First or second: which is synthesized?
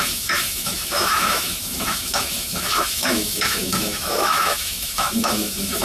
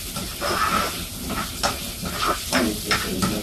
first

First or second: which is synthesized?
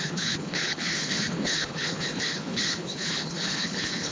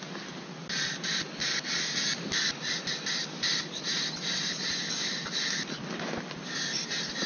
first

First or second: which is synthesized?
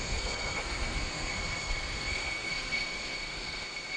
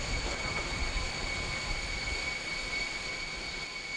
first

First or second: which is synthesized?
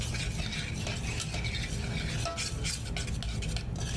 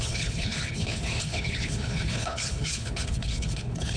second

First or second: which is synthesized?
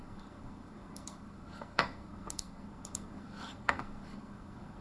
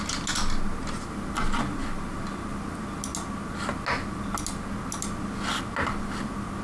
first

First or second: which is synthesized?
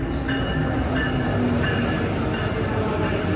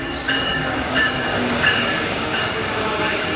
second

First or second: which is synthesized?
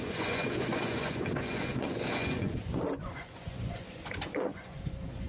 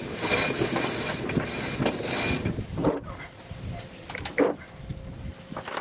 first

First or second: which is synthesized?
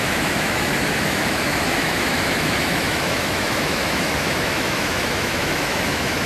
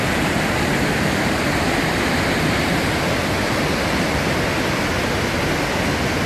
first